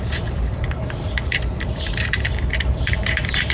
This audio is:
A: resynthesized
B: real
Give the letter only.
A